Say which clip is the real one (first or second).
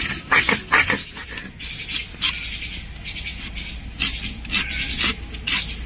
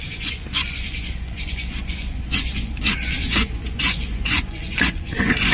first